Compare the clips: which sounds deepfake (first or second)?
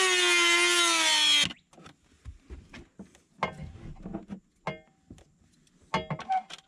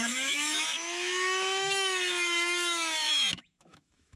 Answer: second